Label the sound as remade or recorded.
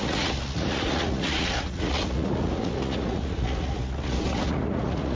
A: remade